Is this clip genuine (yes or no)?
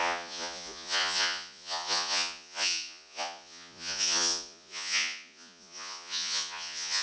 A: no